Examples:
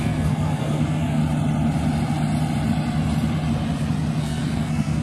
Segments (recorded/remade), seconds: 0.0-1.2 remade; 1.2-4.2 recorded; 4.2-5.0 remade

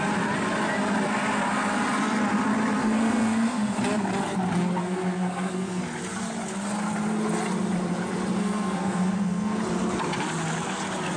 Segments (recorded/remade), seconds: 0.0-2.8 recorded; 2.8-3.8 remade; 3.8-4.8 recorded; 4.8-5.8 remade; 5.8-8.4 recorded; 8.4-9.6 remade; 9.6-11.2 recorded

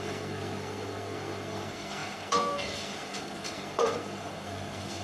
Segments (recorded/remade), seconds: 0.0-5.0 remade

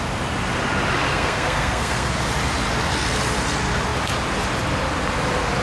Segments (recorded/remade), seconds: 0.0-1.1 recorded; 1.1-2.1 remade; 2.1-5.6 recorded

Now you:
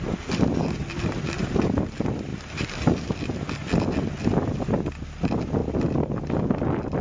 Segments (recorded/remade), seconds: 0.0-7.0 recorded

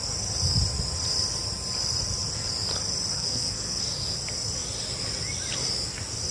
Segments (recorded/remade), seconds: 0.0-3.1 recorded; 3.1-3.8 remade; 3.8-6.3 recorded

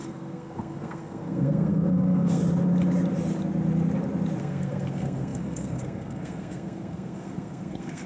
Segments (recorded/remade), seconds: 0.0-2.4 remade; 2.4-4.4 recorded; 4.4-8.1 remade